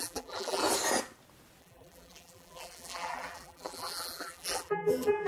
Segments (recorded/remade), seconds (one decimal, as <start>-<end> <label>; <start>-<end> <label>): 0.0-0.6 remade; 0.6-1.6 recorded; 1.6-5.3 remade